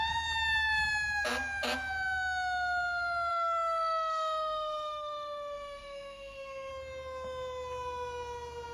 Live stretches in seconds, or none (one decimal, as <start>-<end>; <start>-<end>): 0.0-3.3; 6.7-8.7